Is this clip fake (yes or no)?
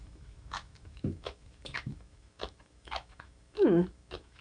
yes